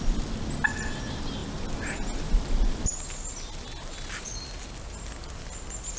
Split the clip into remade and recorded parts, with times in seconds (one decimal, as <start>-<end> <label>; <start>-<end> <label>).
0.0-6.0 recorded